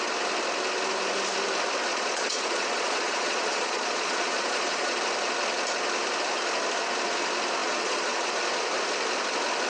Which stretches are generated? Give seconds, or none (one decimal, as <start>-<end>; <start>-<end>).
1.9-5.0; 7.6-8.3